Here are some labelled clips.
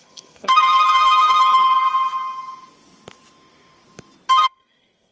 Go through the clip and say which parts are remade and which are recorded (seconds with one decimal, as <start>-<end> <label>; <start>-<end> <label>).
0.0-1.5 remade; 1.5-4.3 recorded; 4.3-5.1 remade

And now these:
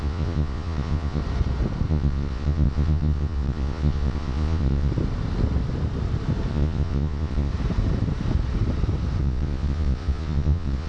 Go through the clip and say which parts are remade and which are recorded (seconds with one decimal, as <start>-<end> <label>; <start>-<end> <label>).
0.0-1.2 remade; 1.2-1.9 recorded; 1.9-4.9 remade; 4.9-6.5 recorded; 6.5-7.5 remade; 7.5-9.2 recorded; 9.2-10.9 remade

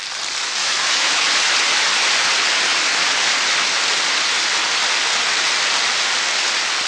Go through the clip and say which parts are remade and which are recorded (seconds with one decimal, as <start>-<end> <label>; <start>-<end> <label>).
0.0-0.6 recorded; 0.6-1.3 remade; 1.3-6.9 recorded